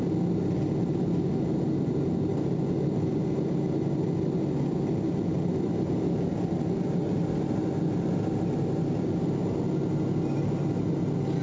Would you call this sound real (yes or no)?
yes